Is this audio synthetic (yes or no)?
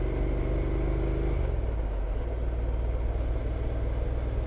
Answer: no